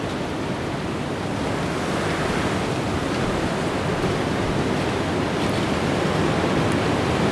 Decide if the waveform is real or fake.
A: real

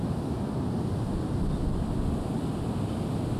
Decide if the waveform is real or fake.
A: real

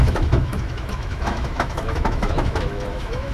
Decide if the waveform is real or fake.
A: fake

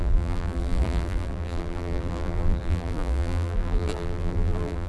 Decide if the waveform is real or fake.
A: fake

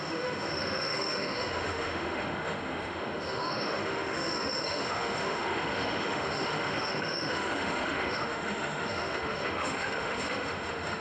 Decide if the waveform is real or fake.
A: fake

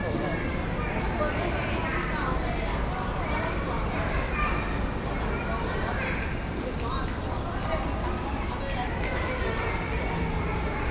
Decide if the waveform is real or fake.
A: real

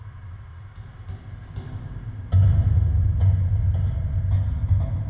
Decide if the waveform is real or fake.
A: real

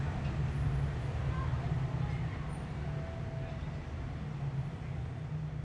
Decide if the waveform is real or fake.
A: real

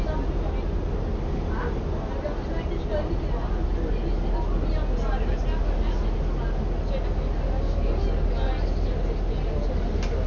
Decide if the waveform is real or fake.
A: real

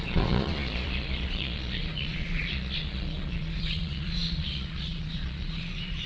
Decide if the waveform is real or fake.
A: fake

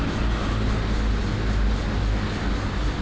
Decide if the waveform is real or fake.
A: real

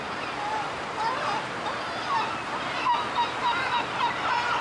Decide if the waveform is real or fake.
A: real